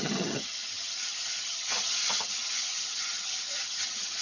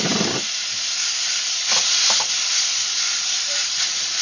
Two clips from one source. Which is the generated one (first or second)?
first